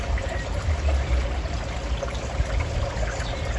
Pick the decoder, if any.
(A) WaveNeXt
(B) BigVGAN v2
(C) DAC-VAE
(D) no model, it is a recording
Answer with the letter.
B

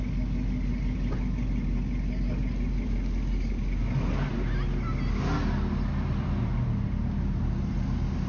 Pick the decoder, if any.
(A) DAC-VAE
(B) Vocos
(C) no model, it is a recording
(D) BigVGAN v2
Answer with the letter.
C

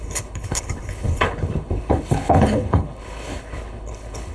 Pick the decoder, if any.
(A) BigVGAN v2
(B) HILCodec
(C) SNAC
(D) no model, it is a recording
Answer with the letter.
B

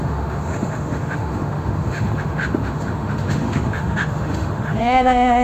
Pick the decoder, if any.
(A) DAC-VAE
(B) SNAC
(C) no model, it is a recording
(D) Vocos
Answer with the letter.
A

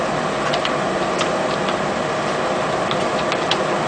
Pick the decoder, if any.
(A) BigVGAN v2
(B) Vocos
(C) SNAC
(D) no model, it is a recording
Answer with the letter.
D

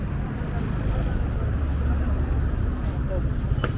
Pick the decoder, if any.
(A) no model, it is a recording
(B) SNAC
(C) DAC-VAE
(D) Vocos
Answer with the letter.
A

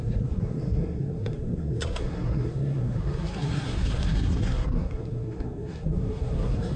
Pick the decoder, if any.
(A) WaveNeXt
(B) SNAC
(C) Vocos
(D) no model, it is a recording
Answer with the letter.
B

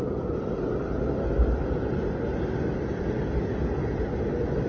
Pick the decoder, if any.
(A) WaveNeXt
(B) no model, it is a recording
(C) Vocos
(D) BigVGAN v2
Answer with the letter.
B